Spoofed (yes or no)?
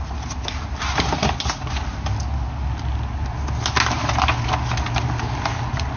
no